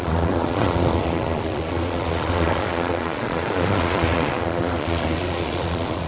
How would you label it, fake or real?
fake